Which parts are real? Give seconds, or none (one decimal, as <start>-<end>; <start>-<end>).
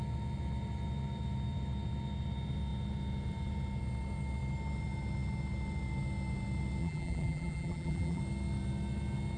0.0-6.8; 8.2-9.4